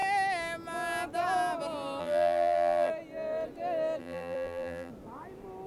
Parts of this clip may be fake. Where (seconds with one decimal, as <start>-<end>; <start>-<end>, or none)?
2.0-2.9; 4.0-4.9